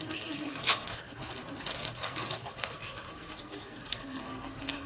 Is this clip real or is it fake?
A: fake